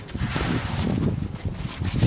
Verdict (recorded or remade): recorded